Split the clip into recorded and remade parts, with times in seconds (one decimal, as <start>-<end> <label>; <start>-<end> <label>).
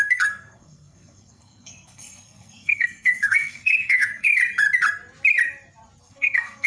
0.0-4.4 remade; 4.4-6.0 recorded; 6.0-6.7 remade